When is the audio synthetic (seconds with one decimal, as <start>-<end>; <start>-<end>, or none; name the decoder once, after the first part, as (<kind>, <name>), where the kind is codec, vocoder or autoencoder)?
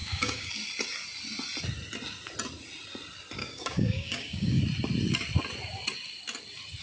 0.0-0.5 (codec, DAC); 3.4-4.6